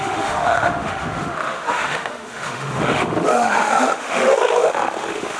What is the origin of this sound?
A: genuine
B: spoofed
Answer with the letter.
B